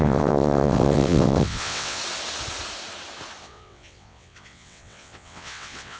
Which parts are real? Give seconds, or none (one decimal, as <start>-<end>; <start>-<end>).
2.0-3.4